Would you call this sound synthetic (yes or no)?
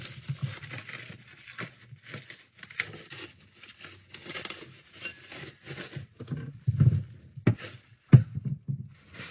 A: no